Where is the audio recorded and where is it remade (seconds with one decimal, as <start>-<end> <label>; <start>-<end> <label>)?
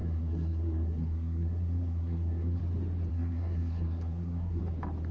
0.0-2.6 remade; 2.6-3.1 recorded; 3.1-4.6 remade; 4.6-5.1 recorded